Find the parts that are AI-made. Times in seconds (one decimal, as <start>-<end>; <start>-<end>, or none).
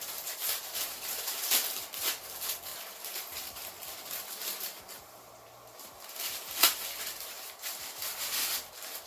0.0-9.1